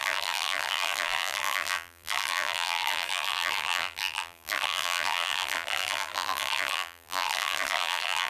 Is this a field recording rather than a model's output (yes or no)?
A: no